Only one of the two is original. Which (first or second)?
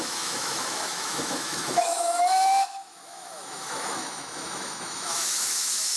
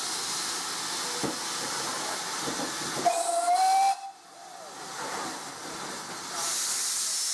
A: second